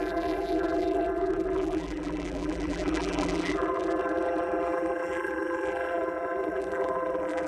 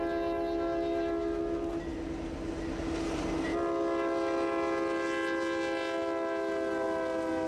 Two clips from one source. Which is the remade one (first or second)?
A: first